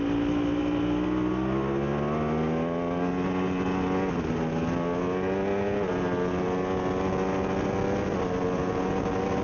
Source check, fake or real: real